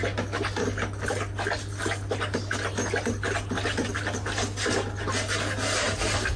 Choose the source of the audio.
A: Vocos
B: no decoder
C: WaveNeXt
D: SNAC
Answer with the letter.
B